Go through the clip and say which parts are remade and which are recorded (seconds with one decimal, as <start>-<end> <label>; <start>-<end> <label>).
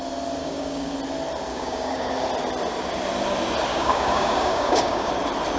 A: 0.0-0.4 recorded; 0.4-0.9 remade; 0.9-1.5 recorded; 1.5-2.1 remade; 2.1-3.7 recorded; 3.7-5.1 remade; 5.1-5.6 recorded